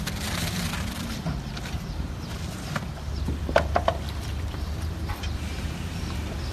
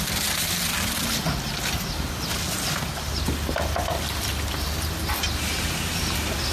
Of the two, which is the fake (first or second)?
first